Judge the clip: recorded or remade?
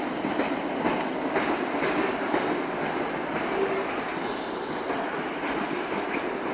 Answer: recorded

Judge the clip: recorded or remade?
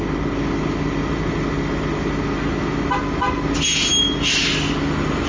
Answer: recorded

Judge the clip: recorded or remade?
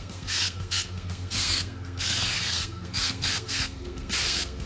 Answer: remade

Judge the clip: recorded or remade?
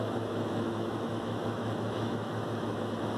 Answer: remade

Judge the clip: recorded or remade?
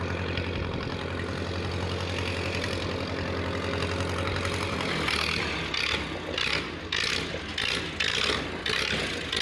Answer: recorded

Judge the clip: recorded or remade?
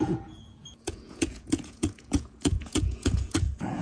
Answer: remade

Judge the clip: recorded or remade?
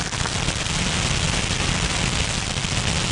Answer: recorded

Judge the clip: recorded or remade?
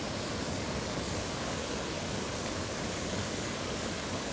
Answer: remade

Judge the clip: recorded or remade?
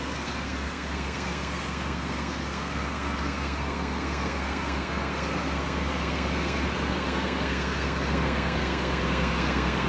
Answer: remade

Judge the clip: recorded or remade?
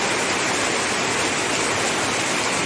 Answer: recorded